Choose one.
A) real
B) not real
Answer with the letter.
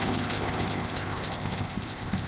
B